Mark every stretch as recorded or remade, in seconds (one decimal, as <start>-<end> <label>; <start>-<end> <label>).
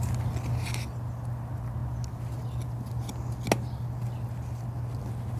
0.0-5.4 recorded